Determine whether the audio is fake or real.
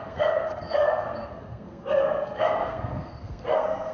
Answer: fake